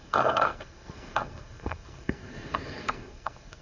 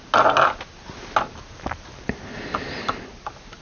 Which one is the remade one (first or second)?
first